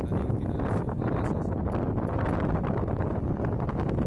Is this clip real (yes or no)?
yes